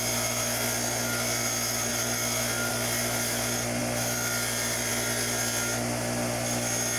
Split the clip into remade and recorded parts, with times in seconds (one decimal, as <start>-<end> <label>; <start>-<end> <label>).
0.0-7.0 recorded